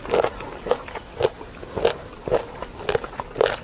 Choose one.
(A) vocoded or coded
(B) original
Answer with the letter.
B